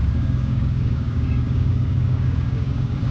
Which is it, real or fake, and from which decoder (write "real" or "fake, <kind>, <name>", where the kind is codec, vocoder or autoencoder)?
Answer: fake, codec, DAC